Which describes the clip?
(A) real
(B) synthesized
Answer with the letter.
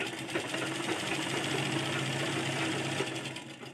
A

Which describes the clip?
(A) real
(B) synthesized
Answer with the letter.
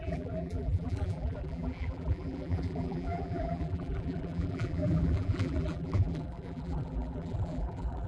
B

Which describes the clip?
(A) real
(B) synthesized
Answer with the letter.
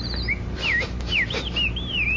B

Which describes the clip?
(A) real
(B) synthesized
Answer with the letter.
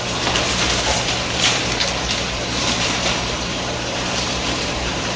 B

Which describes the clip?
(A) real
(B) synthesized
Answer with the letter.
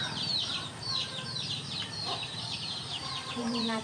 B